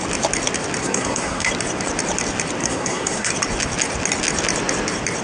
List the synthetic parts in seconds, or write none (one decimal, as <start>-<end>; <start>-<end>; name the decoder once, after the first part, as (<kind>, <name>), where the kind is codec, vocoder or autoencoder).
0.8-1.5 (codec, SNAC); 2.6-3.3